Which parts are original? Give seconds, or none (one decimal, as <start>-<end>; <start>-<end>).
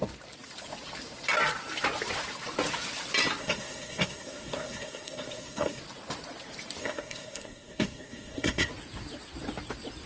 0.0-3.4; 5.8-6.8; 8.7-10.1